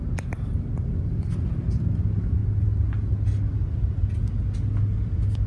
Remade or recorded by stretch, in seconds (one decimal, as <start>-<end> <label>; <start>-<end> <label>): 0.0-5.5 recorded